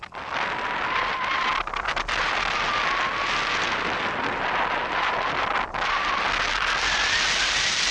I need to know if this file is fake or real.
real